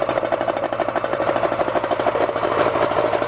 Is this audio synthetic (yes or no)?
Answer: no